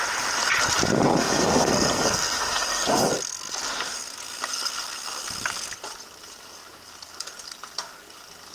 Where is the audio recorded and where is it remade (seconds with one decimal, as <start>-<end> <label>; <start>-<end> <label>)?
0.0-1.1 recorded; 1.1-3.1 remade; 3.1-8.5 recorded